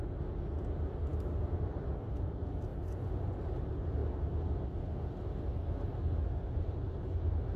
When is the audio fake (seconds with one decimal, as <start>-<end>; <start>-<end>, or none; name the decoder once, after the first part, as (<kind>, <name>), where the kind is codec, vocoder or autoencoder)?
none